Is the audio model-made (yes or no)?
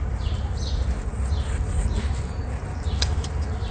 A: no